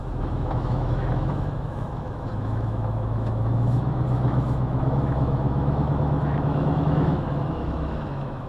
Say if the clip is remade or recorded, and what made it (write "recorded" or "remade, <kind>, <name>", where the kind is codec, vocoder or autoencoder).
remade, autoencoder, DAC-VAE